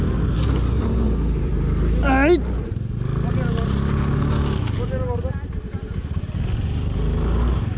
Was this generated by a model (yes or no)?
no